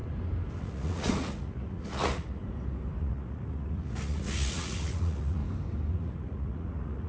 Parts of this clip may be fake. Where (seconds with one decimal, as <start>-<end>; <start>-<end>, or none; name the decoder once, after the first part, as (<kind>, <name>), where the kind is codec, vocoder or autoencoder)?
0.6-2.4 (vocoder, Vocos); 3.0-5.4; 5.9-7.1